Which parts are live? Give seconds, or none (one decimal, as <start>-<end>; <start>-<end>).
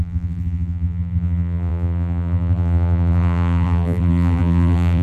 none